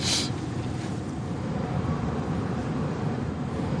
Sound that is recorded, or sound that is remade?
remade